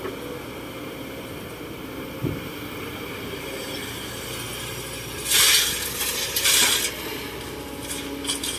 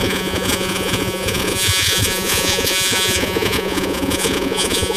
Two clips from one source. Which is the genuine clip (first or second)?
first